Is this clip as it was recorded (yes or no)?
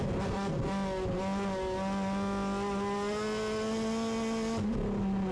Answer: yes